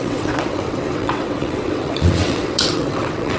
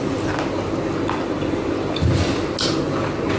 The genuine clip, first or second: second